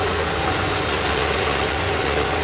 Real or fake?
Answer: fake